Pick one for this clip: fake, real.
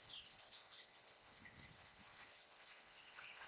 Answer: fake